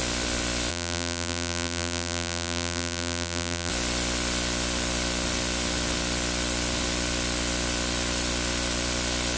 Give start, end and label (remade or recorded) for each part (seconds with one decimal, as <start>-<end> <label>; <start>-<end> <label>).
0.0-0.7 recorded; 0.7-3.7 remade; 3.7-9.4 recorded